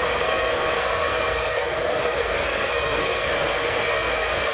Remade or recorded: remade